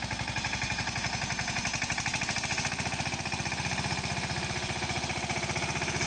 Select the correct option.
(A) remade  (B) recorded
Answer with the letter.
B